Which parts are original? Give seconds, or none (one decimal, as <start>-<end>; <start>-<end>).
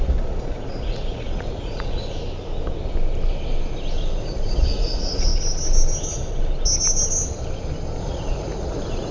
2.0-4.5; 5.3-8.0